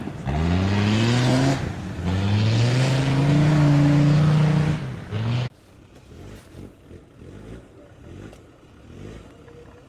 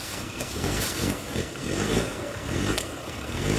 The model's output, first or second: second